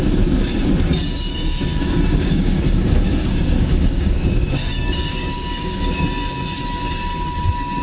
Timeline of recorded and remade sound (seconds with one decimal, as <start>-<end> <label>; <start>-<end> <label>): 0.0-1.3 recorded; 1.3-6.0 remade; 6.0-7.8 recorded